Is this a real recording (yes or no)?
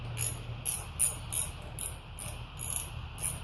yes